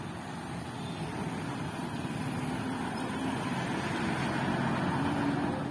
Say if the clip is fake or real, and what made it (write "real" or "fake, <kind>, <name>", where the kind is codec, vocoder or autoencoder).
real